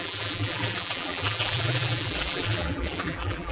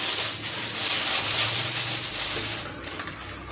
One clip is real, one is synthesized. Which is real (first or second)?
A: second